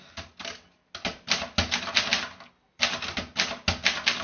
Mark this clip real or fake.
real